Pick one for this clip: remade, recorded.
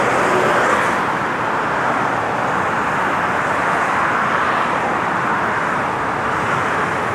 recorded